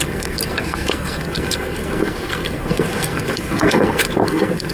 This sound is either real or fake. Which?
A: fake